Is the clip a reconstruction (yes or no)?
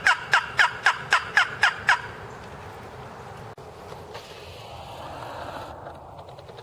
no